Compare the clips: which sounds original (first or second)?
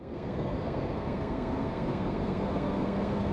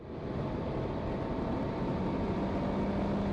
second